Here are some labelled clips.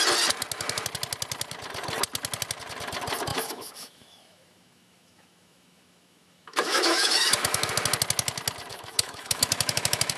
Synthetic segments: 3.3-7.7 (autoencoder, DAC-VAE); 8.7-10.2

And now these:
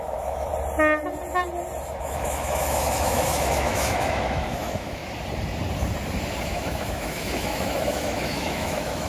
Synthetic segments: 0.0-0.5 (autoencoder, DAC-VAE); 2.0-5.0; 6.4-9.1

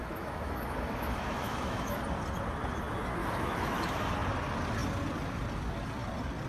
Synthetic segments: 0.0-2.0 (autoencoder, DAC-VAE); 3.2-4.1

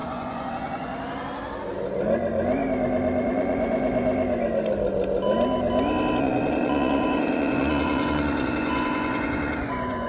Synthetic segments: 0.0-0.9 (vocoder, Vocos); 3.2-4.1; 6.2-10.1

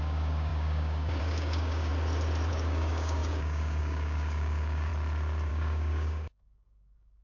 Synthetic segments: 0.0-1.9 (codec, DAC); 2.5-4.9; 5.5-7.2

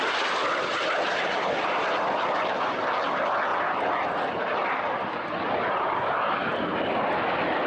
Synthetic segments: 0.0-3.5 (vocoder, BigVGAN v2)

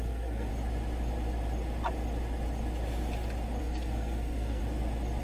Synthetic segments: 0.0-0.5 (codec, SNAC); 3.6-4.6

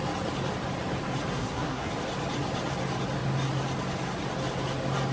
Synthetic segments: 1.3-1.9 (codec, SNAC)